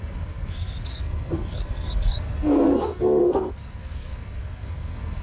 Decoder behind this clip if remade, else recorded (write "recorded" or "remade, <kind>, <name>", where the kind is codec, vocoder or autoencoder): remade, codec, SNAC